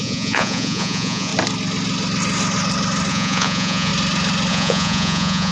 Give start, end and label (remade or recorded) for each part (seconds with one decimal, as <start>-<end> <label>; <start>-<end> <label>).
0.0-1.3 remade; 1.3-3.1 recorded; 3.1-3.9 remade; 3.9-4.5 recorded; 4.5-5.5 remade